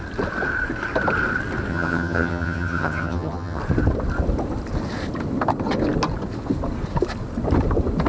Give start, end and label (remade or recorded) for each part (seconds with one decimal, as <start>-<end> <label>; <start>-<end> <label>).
0.0-1.7 recorded; 1.7-3.6 remade; 3.6-8.1 recorded